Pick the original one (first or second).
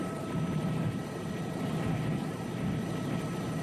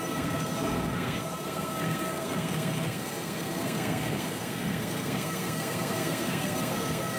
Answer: first